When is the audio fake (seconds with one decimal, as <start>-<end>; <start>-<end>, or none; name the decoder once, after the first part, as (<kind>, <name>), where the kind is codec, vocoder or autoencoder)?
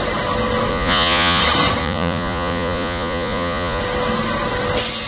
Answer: 0.7-1.4 (vocoder, Vocos); 1.8-3.8